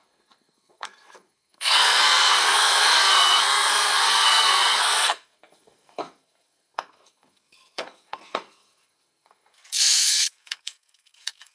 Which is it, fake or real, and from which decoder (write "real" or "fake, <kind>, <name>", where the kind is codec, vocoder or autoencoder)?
fake, codec, SNAC